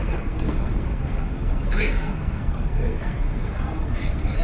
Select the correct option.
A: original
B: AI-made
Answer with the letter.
B